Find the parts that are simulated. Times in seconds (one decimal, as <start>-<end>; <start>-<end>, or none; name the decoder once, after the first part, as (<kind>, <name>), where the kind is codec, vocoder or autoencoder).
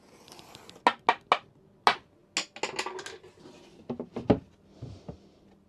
none